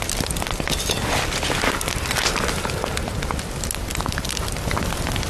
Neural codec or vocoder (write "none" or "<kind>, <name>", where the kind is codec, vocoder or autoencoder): none